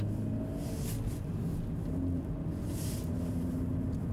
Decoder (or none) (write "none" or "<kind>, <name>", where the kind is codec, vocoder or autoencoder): none